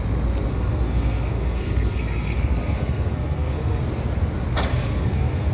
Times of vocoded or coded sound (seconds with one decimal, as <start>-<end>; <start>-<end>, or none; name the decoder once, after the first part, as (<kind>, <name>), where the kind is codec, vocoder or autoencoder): 0.5-3.8 (codec, SNAC); 4.7-5.5